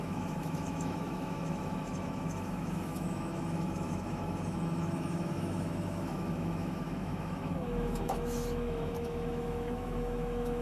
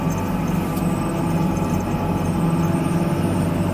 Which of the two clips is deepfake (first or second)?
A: first